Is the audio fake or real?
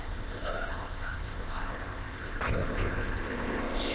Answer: fake